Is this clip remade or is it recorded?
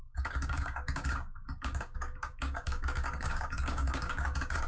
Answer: remade